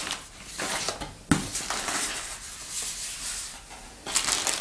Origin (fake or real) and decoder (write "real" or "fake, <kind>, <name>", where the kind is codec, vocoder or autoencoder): real